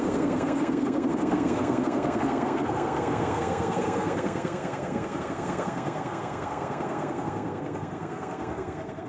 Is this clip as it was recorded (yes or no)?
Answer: no